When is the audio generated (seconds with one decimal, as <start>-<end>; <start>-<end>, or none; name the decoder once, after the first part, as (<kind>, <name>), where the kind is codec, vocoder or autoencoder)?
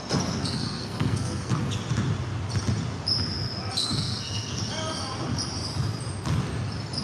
0.4-1.5 (codec, SNAC); 3.8-4.6